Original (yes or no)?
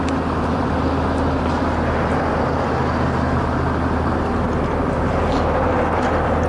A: yes